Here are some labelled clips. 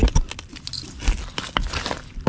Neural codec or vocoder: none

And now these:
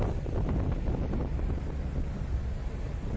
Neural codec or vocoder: none